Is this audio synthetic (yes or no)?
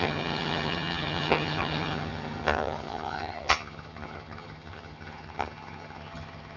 yes